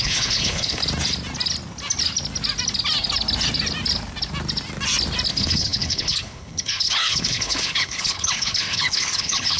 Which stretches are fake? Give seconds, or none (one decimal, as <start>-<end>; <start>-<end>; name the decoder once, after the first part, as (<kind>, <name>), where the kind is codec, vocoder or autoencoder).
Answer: 0.0-0.8 (codec, HILCodec); 5.3-9.6